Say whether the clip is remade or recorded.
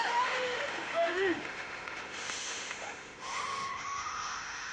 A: remade